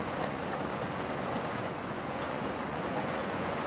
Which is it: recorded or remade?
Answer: remade